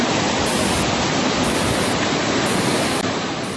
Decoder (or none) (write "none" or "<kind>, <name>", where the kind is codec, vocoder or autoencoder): none